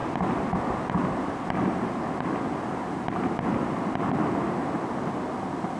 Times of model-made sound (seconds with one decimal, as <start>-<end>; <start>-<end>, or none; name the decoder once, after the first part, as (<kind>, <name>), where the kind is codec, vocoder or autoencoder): none